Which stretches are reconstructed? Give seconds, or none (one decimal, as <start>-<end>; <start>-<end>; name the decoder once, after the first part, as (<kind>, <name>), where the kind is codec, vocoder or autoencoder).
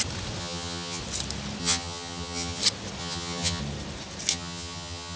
0.4-1.0 (vocoder, HiFi-GAN); 1.6-2.6; 3.0-3.6; 4.3-5.2